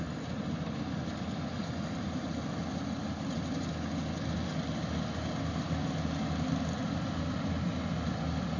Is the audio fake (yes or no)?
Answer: no